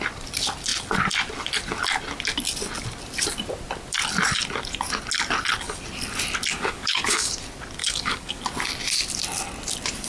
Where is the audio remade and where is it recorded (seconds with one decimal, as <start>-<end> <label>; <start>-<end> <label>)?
0.0-6.5 recorded; 6.5-7.3 remade; 7.3-7.8 recorded; 7.8-8.4 remade; 8.4-10.1 recorded